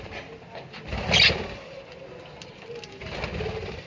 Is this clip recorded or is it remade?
recorded